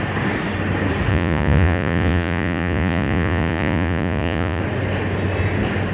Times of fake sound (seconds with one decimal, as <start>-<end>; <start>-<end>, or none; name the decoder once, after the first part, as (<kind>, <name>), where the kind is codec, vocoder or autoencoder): 1.1-4.6 (vocoder, Vocos)